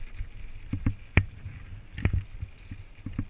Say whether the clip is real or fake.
real